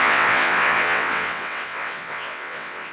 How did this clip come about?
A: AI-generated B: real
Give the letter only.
A